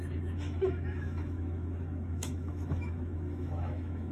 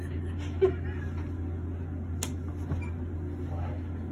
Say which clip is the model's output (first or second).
first